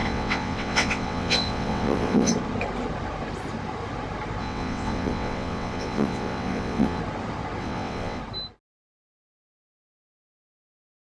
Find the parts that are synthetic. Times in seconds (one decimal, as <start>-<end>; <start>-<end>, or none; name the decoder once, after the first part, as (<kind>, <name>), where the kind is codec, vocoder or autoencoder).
0.0-2.3 (vocoder, WaveNeXt); 4.4-7.0; 7.6-8.2